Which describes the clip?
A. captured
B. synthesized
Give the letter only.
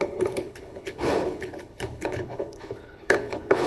B